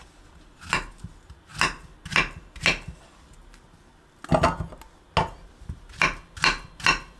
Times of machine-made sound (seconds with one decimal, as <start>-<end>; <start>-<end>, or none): none